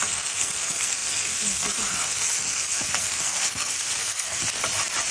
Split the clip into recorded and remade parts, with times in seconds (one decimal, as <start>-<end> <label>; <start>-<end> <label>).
0.0-4.4 remade; 4.4-5.1 recorded